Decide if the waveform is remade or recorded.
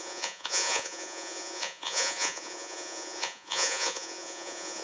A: remade